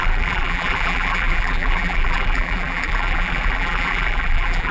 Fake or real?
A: fake